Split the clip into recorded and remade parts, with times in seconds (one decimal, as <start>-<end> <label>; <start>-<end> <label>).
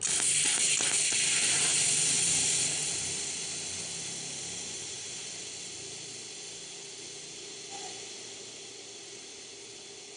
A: 0.0-10.2 recorded